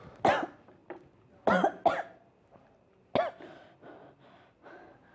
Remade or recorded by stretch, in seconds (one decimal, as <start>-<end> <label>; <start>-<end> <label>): 0.0-5.1 recorded